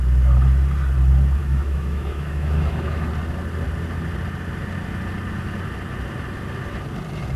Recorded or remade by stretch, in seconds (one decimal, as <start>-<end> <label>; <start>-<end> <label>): 0.0-1.4 recorded; 1.4-3.1 remade; 3.1-7.4 recorded

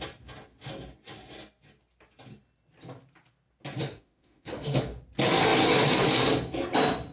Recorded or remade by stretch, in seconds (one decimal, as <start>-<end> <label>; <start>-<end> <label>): 0.0-3.8 recorded; 3.8-5.0 remade; 5.0-7.1 recorded

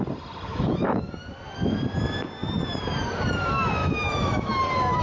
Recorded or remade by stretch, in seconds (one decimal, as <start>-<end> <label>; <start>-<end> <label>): 0.0-0.5 recorded; 0.5-1.1 remade; 1.1-3.8 recorded; 3.8-4.5 remade; 4.5-5.0 recorded

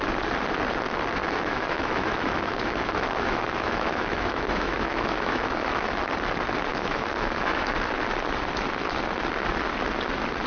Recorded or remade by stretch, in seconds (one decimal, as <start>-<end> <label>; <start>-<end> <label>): 0.0-1.2 recorded; 1.2-6.0 remade; 6.0-6.7 recorded; 6.7-7.7 remade; 7.7-10.5 recorded

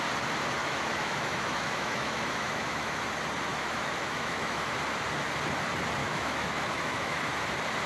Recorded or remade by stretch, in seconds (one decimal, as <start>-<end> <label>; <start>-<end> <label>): 0.0-0.6 recorded; 0.6-3.0 remade; 3.0-3.5 recorded; 3.5-4.8 remade; 4.8-6.0 recorded; 6.0-7.2 remade; 7.2-7.9 recorded

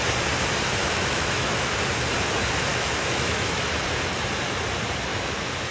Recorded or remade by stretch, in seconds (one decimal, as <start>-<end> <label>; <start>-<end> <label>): 0.0-0.8 recorded; 0.8-1.8 remade; 1.8-2.7 recorded; 2.7-3.7 remade; 3.7-5.1 recorded; 5.1-5.7 remade

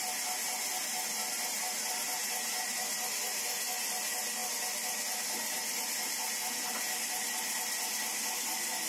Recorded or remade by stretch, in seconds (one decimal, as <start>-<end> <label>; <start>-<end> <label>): 0.0-8.9 recorded